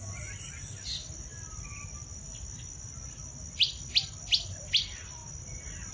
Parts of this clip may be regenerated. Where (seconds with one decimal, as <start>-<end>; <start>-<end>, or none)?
none